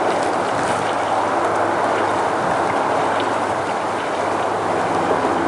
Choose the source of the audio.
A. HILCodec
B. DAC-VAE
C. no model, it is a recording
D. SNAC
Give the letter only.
C